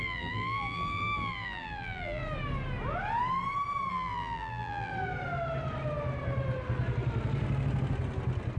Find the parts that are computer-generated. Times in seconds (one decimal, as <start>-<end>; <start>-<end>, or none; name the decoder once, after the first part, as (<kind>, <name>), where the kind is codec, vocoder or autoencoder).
0.0-2.2 (vocoder, BigVGAN v2); 3.9-4.9